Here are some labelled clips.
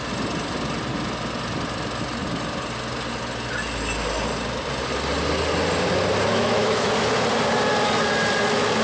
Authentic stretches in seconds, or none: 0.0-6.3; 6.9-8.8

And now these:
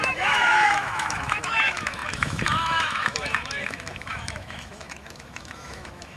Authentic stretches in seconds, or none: none

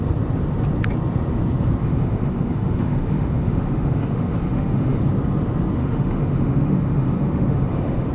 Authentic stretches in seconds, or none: 0.0-1.8; 5.0-5.8

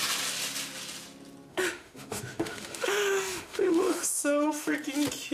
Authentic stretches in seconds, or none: 0.0-1.5; 4.7-5.3